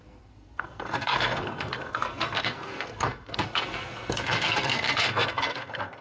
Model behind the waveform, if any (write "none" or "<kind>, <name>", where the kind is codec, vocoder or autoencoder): codec, SNAC